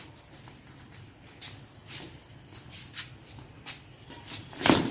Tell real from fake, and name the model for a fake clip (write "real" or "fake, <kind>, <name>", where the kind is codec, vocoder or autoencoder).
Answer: real